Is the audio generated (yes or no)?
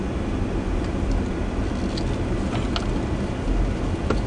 no